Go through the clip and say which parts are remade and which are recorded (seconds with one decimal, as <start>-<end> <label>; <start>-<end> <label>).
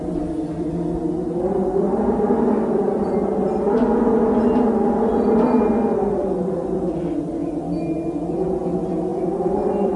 0.0-9.1 recorded; 9.1-10.0 remade